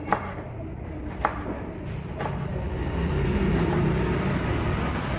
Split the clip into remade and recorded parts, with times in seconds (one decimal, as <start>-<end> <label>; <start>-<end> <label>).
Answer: 0.0-5.2 recorded